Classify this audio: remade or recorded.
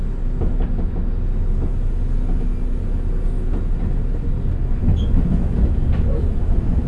recorded